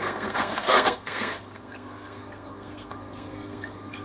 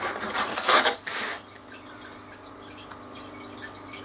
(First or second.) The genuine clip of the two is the second